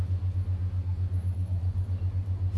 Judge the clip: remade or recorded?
recorded